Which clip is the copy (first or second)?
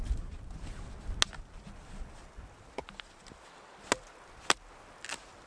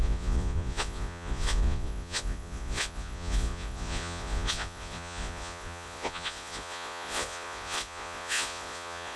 second